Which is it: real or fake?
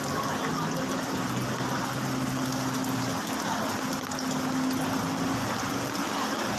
real